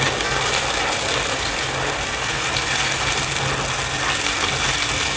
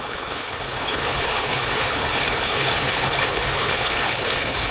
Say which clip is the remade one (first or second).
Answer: second